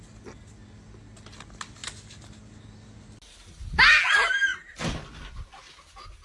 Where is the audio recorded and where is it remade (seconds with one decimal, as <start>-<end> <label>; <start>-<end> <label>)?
0.0-6.2 recorded